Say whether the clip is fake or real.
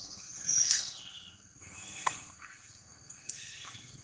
fake